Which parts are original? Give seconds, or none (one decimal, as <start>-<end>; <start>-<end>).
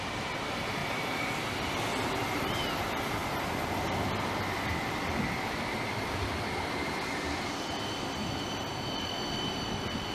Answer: 0.0-6.8; 7.6-10.1